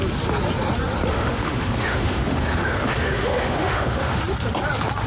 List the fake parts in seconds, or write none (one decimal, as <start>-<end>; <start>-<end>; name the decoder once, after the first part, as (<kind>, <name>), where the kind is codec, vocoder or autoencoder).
1.1-4.2 (autoencoder, DAC-VAE)